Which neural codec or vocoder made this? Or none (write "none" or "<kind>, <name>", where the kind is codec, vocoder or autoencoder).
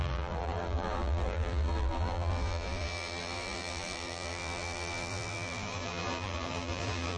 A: vocoder, BigVGAN v2